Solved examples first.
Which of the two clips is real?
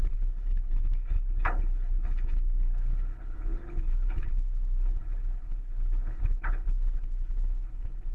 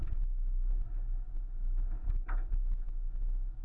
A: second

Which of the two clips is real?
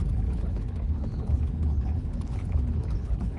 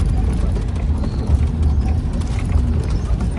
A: second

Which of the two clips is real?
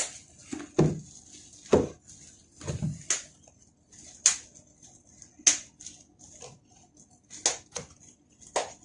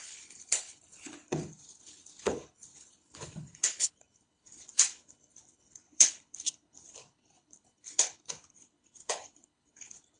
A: first